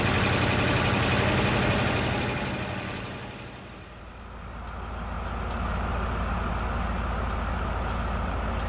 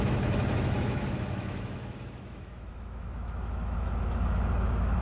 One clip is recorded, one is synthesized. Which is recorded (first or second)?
first